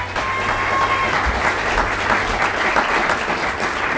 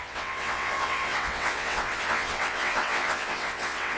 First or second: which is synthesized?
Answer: second